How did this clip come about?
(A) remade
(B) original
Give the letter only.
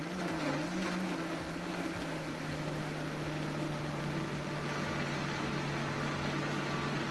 B